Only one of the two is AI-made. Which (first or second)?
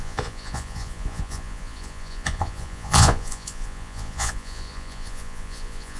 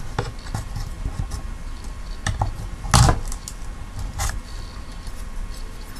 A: first